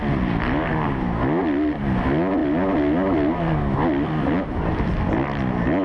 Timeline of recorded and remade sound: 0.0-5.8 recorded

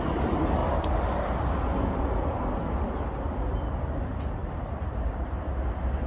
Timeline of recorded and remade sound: 0.0-6.1 recorded

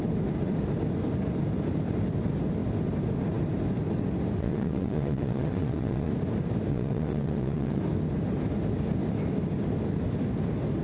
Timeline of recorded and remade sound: 0.0-4.4 recorded; 4.4-6.1 remade; 6.1-6.7 recorded; 6.7-7.8 remade; 7.8-10.8 recorded